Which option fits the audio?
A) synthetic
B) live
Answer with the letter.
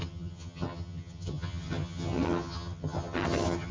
A